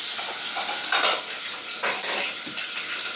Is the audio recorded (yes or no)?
yes